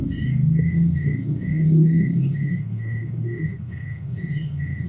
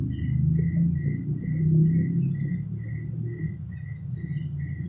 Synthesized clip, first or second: first